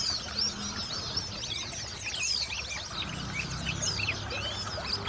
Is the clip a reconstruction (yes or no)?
no